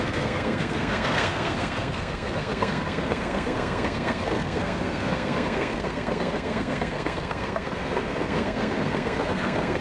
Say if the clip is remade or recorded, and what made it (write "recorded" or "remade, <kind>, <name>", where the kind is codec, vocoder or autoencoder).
remade, codec, SNAC